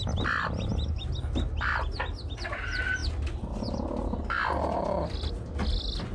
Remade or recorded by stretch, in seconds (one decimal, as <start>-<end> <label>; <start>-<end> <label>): 0.0-6.1 recorded